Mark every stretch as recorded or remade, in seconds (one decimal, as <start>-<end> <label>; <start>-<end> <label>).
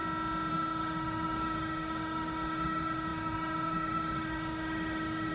0.0-0.5 recorded; 0.5-5.3 remade